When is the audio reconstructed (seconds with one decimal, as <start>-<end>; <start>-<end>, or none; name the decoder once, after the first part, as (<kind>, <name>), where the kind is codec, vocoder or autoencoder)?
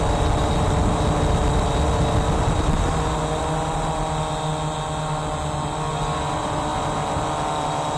none